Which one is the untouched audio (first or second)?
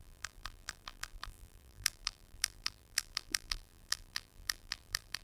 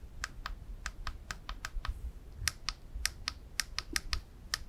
second